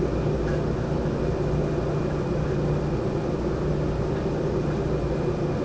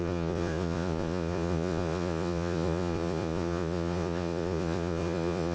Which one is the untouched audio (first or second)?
first